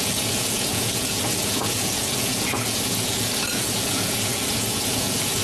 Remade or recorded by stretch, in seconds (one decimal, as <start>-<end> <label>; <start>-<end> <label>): 0.0-5.4 remade